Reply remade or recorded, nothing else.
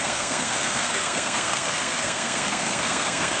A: remade